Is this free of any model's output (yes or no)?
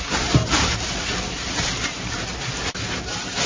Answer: yes